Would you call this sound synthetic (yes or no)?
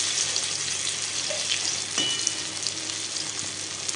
no